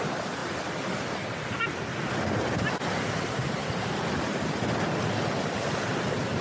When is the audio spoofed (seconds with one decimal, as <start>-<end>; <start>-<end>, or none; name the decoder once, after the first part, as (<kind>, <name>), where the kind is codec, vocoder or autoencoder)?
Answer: none

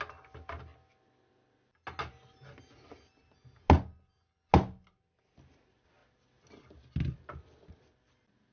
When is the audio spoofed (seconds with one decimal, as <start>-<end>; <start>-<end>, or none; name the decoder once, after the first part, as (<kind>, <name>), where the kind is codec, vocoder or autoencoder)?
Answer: none